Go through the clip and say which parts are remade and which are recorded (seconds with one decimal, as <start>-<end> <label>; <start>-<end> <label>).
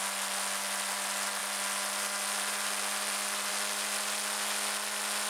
0.0-5.3 recorded